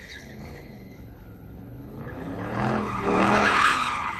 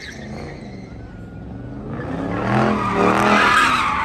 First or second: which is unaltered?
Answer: second